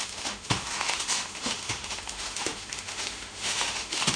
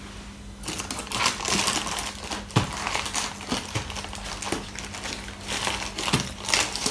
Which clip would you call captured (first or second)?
second